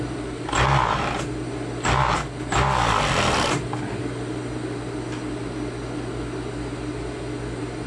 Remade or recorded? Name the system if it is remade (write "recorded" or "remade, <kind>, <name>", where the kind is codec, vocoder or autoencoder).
recorded